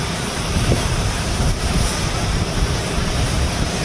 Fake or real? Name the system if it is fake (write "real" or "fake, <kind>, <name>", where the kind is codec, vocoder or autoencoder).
fake, vocoder, BigVGAN v2